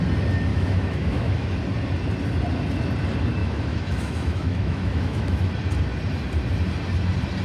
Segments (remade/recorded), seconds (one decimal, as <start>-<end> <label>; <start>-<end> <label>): 0.0-0.5 recorded; 0.5-1.5 remade; 1.5-3.4 recorded; 3.4-5.5 remade; 5.5-7.4 recorded